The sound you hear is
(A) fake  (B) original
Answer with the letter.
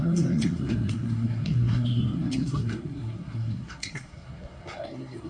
A